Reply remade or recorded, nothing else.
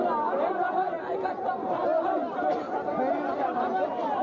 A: recorded